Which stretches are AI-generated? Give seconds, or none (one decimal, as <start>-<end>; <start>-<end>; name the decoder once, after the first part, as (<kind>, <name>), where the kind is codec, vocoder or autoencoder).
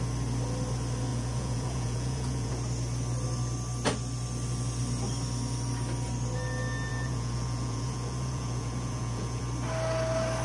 1.1-2.5 (vocoder, Vocos); 6.9-9.4